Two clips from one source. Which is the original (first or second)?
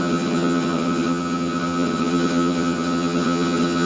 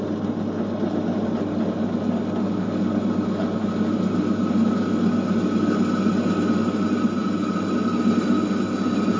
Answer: second